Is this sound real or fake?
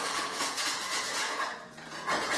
fake